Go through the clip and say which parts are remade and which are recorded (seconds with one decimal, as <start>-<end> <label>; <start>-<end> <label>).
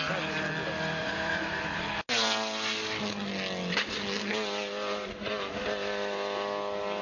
0.0-1.0 recorded; 1.0-1.8 remade; 1.8-7.0 recorded